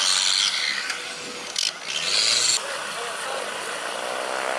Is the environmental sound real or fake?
real